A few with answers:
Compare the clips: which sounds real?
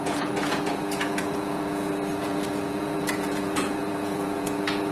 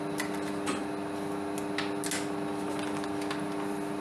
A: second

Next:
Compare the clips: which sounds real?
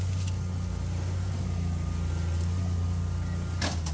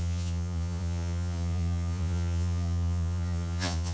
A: first